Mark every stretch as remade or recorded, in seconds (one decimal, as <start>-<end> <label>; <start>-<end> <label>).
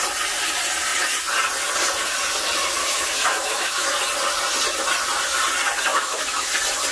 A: 0.0-2.8 recorded; 2.8-3.9 remade; 3.9-5.9 recorded; 5.9-6.5 remade; 6.5-6.9 recorded